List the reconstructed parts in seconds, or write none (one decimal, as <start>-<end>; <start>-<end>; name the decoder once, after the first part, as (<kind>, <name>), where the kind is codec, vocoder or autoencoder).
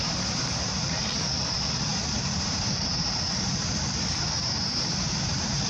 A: 0.0-5.7 (vocoder, BigVGAN v2)